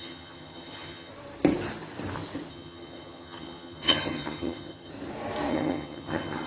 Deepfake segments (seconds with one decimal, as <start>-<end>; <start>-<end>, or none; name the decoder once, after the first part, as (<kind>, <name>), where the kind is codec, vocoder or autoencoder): 0.0-1.1 (vocoder, HiFi-GAN); 2.5-4.9; 5.5-6.5